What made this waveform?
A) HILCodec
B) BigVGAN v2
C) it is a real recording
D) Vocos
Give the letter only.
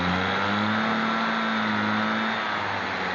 C